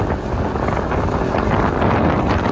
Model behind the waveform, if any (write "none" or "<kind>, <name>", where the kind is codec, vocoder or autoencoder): none